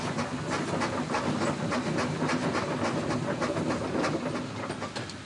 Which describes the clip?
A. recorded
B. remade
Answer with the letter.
A